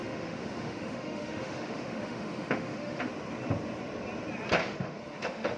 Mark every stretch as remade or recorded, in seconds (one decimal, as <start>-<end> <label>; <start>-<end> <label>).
0.0-3.1 remade; 3.1-4.6 recorded; 4.6-5.6 remade